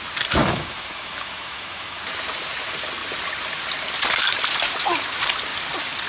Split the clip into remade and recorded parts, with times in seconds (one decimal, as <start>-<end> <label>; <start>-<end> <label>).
0.0-0.4 recorded; 0.4-2.0 remade; 2.0-6.1 recorded